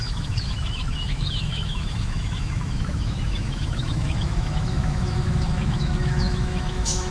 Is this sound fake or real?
fake